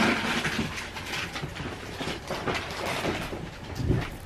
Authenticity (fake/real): real